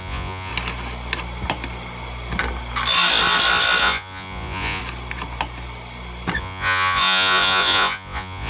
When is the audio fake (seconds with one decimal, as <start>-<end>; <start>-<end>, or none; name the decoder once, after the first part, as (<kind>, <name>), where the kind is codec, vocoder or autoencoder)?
0.0-0.5 (vocoder, Vocos); 3.8-4.8; 6.4-8.5